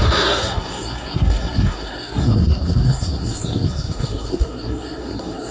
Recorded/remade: remade